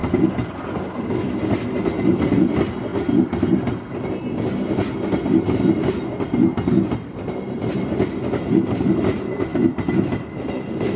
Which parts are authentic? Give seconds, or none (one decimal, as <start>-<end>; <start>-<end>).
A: 0.0-11.0